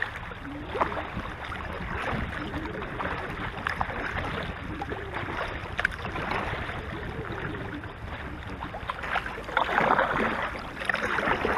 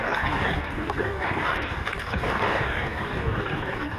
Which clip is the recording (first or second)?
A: first